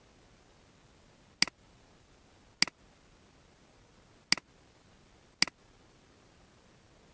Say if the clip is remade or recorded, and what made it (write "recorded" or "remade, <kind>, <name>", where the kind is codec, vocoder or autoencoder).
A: recorded